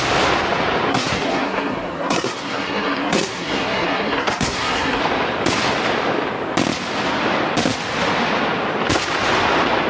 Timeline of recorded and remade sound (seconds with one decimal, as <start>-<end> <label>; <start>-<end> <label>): 0.0-0.9 recorded; 0.9-5.0 remade; 5.0-9.9 recorded